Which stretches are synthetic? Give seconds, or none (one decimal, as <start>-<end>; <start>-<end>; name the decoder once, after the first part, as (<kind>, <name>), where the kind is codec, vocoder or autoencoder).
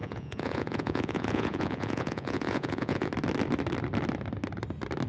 0.0-3.1 (vocoder, Vocos)